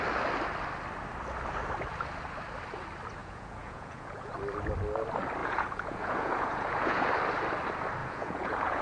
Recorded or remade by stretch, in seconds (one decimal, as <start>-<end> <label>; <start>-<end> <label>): 0.0-3.2 recorded; 3.2-4.3 remade; 4.3-5.4 recorded; 5.4-7.1 remade; 7.1-8.0 recorded; 8.0-8.8 remade